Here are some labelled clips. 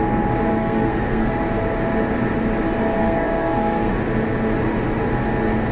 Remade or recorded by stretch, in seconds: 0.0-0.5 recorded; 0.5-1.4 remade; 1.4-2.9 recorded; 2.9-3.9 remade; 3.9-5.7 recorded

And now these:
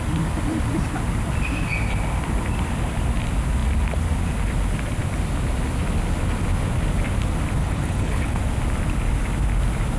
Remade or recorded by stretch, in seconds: 0.0-7.6 recorded; 7.6-8.4 remade; 8.4-10.0 recorded